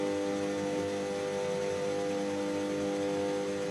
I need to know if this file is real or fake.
real